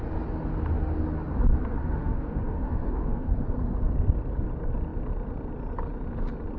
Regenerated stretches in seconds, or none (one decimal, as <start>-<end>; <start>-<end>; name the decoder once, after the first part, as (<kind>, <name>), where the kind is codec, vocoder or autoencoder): 1.8-3.3 (autoencoder, DAC-VAE)